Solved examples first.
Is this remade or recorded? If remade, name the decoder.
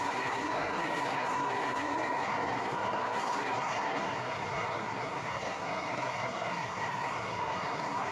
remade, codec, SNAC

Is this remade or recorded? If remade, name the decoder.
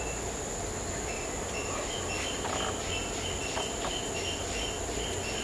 recorded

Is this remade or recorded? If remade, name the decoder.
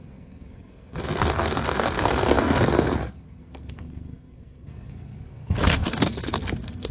remade, codec, SNAC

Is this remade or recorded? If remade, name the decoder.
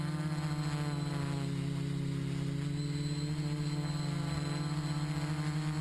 recorded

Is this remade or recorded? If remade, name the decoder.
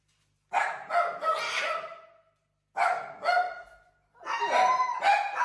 recorded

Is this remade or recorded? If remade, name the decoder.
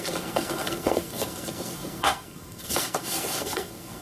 remade, codec, SNAC